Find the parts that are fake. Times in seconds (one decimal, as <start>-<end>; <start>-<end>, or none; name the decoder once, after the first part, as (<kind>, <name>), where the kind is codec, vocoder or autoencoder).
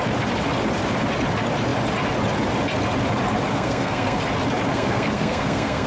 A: 3.5-4.2 (codec, SNAC); 4.7-5.9